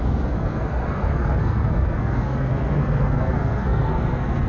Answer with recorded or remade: remade